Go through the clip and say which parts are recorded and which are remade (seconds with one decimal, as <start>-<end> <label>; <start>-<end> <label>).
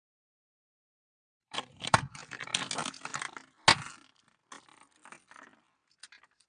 0.0-2.5 remade; 2.5-6.5 recorded